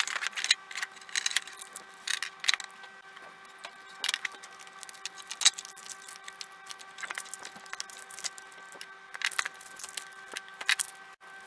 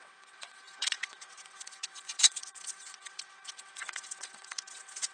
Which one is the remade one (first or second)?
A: second